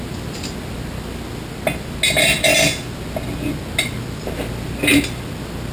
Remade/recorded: recorded